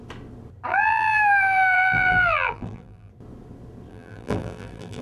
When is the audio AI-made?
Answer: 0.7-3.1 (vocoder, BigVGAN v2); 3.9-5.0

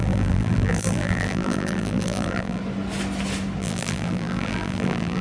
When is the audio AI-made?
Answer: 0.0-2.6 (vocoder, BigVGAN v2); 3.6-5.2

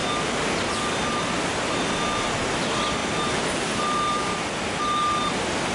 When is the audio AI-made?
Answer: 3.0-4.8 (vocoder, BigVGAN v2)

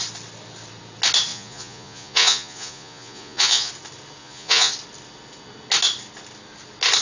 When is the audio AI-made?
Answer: 1.3-3.7 (vocoder, Vocos); 4.2-4.7